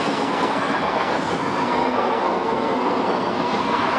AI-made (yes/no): yes